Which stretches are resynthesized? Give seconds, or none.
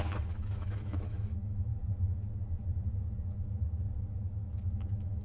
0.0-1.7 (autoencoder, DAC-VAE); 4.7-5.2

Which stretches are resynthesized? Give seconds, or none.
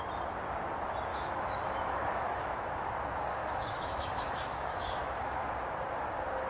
1.1-2.9 (autoencoder, DAC-VAE); 3.4-5.5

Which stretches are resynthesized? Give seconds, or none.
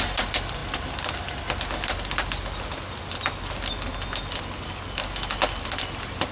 none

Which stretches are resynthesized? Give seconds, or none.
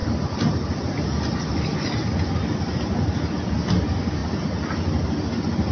none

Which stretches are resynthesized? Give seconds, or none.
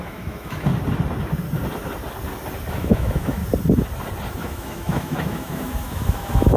0.0-0.7 (autoencoder, DAC-VAE); 2.7-3.4; 4.3-6.6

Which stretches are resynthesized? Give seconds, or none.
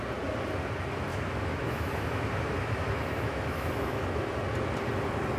1.1-4.3 (autoencoder, DAC-VAE)